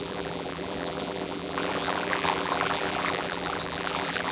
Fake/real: fake